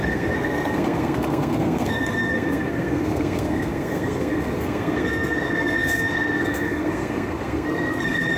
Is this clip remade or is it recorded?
remade